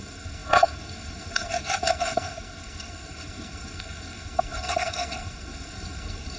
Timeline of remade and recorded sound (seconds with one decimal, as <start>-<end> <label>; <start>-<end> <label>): 0.0-6.4 remade